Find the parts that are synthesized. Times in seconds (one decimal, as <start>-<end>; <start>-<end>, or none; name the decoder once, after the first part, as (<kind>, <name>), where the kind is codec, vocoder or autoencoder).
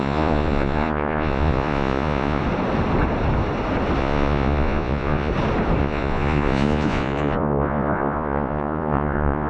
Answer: 0.0-2.4 (vocoder, Vocos); 4.0-5.3; 5.8-9.5